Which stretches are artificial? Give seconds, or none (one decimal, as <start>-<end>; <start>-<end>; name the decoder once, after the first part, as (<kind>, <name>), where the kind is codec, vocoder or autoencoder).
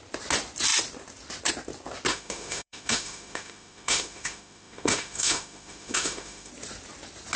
2.1-6.5 (autoencoder, DAC-VAE)